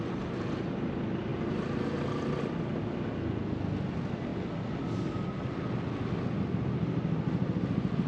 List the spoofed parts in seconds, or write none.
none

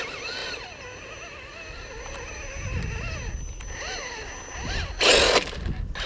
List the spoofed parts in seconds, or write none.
none

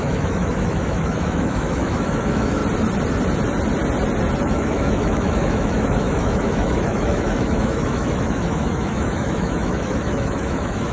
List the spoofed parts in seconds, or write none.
0.0-2.6 (autoencoder, DAC-VAE); 4.4-10.9